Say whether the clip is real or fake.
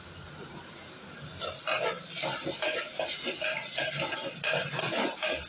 real